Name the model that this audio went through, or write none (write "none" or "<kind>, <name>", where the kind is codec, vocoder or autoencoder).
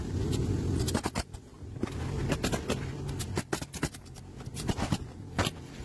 none